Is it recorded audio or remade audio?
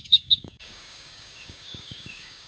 remade